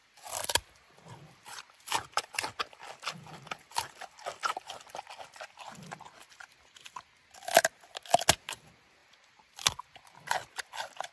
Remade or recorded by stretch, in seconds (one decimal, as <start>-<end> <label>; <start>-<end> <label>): 0.0-2.3 remade; 2.3-9.0 recorded; 9.0-11.1 remade